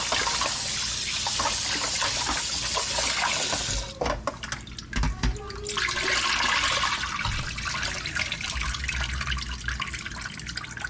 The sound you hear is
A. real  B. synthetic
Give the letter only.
A